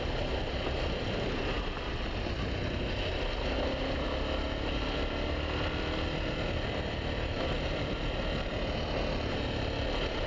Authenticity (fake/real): real